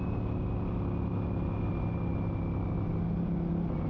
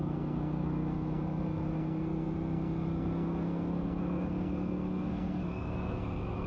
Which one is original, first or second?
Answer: first